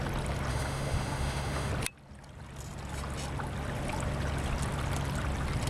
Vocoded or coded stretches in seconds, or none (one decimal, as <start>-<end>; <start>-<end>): 0.5-1.7